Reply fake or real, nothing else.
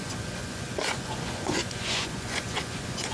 fake